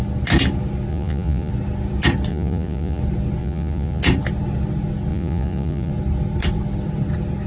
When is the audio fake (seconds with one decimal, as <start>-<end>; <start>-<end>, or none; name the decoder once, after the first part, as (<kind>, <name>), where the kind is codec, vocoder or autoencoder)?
0.9-1.5 (vocoder, Vocos); 2.3-3.0; 3.4-4.0; 5.1-5.9

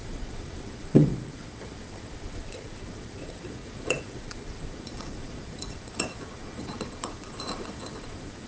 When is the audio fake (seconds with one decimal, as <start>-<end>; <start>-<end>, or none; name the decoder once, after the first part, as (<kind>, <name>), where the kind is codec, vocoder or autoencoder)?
0.0-8.5 (vocoder, Vocos)

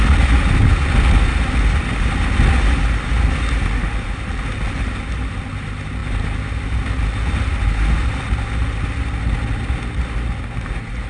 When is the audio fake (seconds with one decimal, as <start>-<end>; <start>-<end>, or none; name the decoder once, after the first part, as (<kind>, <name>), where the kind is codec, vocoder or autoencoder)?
none

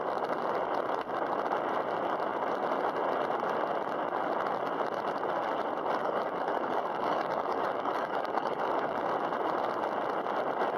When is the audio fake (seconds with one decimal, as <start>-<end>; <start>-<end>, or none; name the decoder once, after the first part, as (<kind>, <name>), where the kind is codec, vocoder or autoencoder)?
6.0-9.0 (codec, DAC)